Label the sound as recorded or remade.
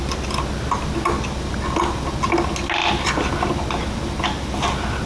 recorded